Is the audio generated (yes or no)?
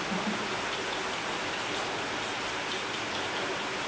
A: no